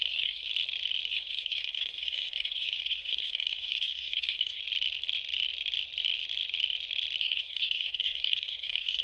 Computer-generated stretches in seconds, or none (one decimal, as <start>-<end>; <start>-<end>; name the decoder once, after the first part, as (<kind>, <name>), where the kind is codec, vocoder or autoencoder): 0.0-0.5 (codec, SNAC); 1.1-4.6; 7.2-9.0